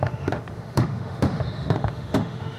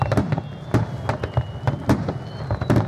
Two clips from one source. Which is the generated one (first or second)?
first